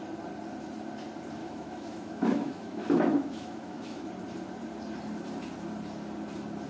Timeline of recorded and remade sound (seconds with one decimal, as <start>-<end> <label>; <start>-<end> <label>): 0.0-1.4 recorded; 1.4-4.1 remade; 4.1-6.7 recorded